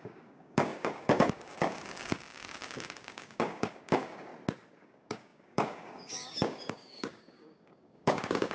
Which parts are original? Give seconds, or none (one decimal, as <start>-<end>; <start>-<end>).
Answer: 4.3-4.8